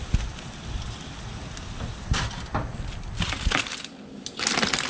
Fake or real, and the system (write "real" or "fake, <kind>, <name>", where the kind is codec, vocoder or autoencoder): fake, vocoder, BigVGAN v2